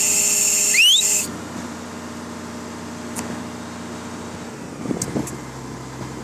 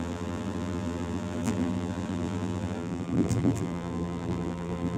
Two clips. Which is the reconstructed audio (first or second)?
second